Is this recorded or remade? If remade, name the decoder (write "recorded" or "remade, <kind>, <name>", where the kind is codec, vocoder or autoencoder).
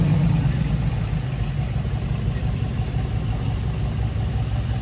recorded